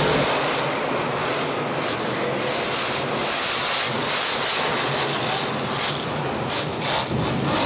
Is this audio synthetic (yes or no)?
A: no